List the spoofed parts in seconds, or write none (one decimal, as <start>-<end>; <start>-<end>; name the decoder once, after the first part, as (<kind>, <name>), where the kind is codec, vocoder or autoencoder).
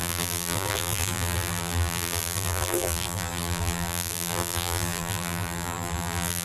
0.0-6.4 (vocoder, BigVGAN v2)